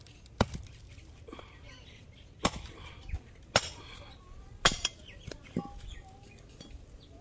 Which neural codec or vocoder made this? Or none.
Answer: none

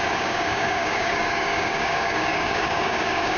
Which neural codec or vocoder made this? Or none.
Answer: codec, DAC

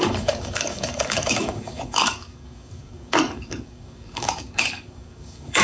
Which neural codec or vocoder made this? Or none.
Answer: codec, DAC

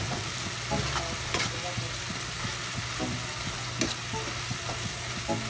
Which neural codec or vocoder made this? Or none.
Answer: none